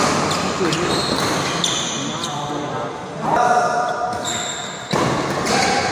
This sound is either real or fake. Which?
real